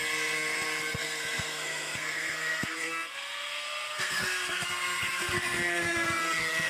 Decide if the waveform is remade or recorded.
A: remade